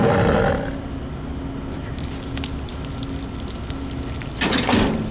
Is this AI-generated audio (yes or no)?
no